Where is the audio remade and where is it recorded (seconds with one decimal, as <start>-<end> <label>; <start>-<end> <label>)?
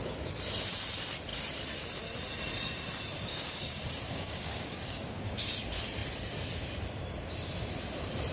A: 0.0-3.3 recorded; 3.3-5.6 remade; 5.6-8.3 recorded